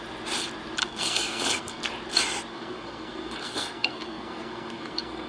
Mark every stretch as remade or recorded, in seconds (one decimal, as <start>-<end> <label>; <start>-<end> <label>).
0.0-0.8 recorded; 0.8-1.8 remade; 1.8-2.5 recorded; 2.5-5.3 remade

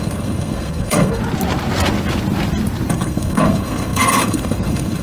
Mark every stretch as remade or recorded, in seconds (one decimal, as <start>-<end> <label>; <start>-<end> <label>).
0.0-1.2 remade; 1.2-2.9 recorded; 2.9-5.0 remade

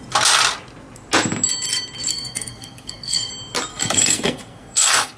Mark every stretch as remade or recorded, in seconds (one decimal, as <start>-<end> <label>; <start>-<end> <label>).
0.0-2.1 recorded; 2.1-3.3 remade; 3.3-3.7 recorded; 3.7-5.2 remade

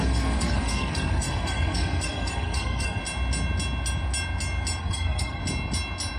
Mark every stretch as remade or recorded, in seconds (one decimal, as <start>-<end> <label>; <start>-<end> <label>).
0.0-3.0 remade; 3.0-4.8 recorded; 4.8-5.4 remade; 5.4-6.2 recorded

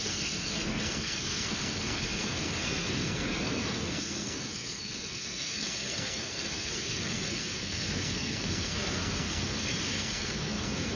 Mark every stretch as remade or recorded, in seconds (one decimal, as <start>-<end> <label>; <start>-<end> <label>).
0.0-11.0 remade